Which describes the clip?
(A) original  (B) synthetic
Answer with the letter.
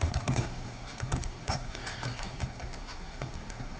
B